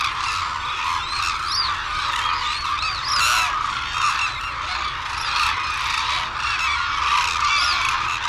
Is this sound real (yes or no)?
yes